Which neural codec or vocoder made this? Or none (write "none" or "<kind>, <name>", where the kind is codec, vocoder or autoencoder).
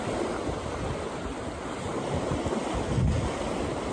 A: none